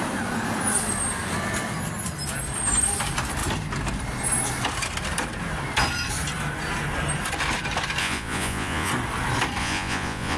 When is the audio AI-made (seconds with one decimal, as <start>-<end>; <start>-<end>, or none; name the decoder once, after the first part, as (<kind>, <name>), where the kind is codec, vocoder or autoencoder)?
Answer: 8.0-8.9 (vocoder, Vocos); 9.6-10.4